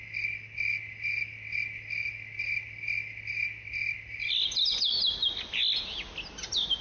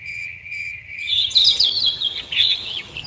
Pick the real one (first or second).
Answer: first